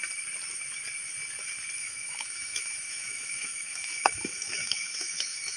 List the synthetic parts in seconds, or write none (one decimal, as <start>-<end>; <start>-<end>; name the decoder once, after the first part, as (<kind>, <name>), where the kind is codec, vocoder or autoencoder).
1.8-5.6 (autoencoder, DAC-VAE)